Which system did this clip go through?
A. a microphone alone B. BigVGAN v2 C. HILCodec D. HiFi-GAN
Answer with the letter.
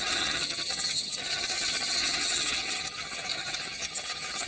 D